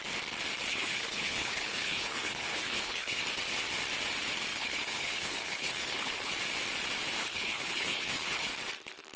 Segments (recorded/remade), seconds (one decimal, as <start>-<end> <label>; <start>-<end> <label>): 0.0-0.7 recorded; 0.7-3.2 remade; 3.2-4.5 recorded; 4.5-6.3 remade; 6.3-7.2 recorded; 7.2-8.5 remade; 8.5-9.2 recorded